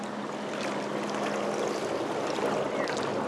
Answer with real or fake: real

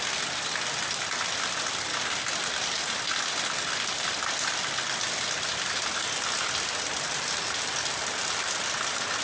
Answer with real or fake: real